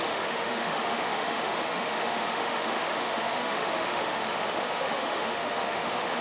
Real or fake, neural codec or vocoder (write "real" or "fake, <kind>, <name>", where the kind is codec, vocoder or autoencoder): fake, autoencoder, DAC-VAE